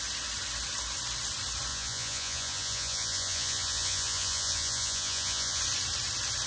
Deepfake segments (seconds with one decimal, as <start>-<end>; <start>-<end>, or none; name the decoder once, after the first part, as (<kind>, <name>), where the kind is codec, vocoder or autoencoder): 1.7-5.6 (vocoder, Vocos)